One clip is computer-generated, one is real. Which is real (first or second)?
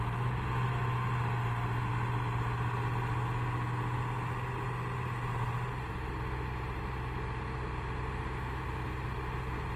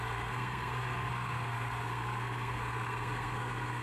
first